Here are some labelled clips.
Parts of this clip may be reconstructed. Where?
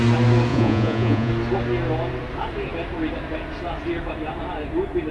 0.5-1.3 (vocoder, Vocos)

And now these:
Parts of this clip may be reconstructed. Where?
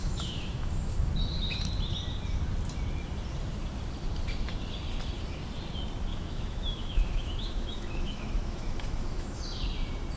0.0-1.1 (autoencoder, DAC-VAE); 6.1-9.4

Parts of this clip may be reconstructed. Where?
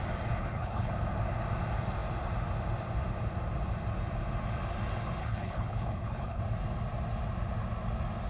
0.4-0.9 (codec, HILCodec); 5.2-6.4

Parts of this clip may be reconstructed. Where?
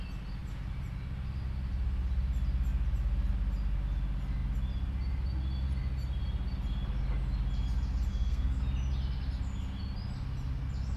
8.1-8.6 (codec, SNAC)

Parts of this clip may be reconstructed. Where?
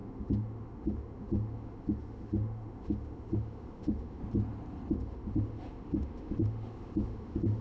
0.0-4.2 (autoencoder, DAC-VAE); 4.9-7.6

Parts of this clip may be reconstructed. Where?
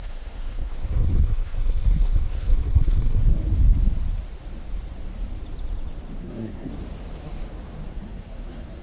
0.0-3.2 (codec, SNAC); 6.2-6.7; 7.9-8.8